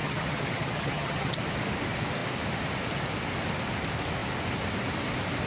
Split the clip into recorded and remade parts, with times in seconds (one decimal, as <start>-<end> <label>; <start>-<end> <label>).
0.0-1.4 remade; 1.4-5.5 recorded